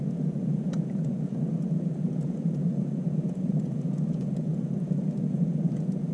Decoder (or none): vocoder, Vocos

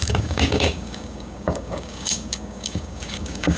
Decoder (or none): codec, DAC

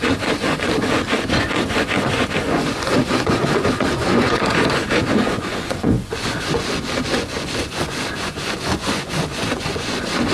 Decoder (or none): vocoder, Vocos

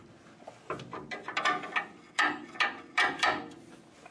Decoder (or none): none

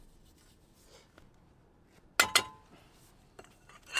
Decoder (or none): none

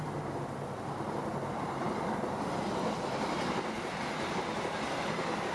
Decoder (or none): none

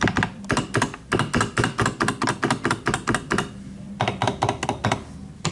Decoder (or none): none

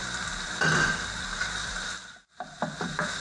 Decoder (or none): none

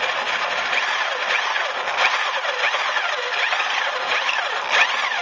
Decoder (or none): none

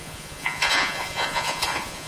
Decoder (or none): vocoder, Vocos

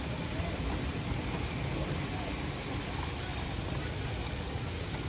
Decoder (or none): vocoder, BigVGAN v2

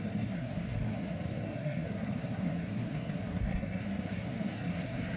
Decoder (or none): codec, SNAC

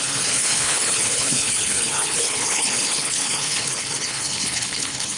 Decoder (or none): codec, HILCodec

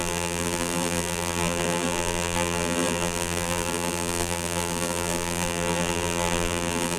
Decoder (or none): vocoder, BigVGAN v2